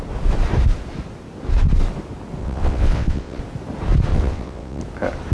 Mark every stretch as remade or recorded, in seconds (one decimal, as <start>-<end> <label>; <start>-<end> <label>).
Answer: 0.0-2.4 recorded; 2.4-3.4 remade; 3.4-4.1 recorded; 4.1-4.8 remade; 4.8-5.3 recorded